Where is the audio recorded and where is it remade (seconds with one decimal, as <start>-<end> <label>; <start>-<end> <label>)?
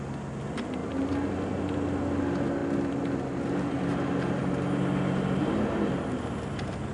0.0-6.9 recorded